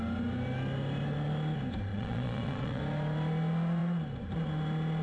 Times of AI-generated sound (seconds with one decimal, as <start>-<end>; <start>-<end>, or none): 1.9-2.8